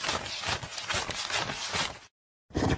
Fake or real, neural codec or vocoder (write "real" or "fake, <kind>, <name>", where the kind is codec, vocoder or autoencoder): real